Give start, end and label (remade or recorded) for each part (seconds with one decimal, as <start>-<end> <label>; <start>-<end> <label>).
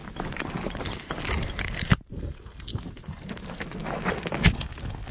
0.0-2.1 remade; 2.1-2.7 recorded; 2.7-3.3 remade; 3.3-5.1 recorded